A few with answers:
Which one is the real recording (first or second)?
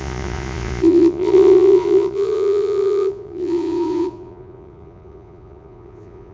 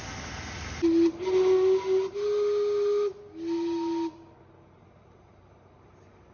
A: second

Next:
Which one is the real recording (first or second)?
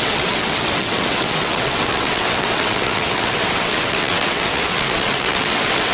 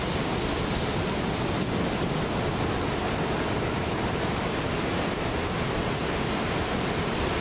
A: second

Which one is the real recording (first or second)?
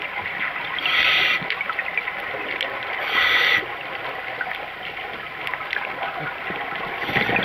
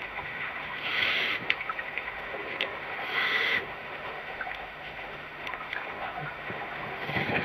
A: first